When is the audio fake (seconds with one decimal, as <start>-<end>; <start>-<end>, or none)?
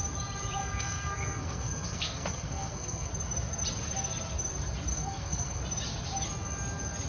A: 0.6-3.1; 4.9-5.6